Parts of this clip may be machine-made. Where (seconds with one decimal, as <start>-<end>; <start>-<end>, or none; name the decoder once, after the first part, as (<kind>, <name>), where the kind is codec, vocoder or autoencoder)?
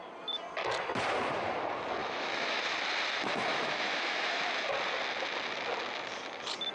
2.0-2.6 (autoencoder, DAC-VAE); 3.5-4.4